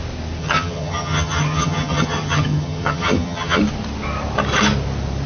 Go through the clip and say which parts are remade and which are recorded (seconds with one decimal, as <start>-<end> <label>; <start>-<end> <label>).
0.0-0.4 recorded; 0.4-3.6 remade; 3.6-5.3 recorded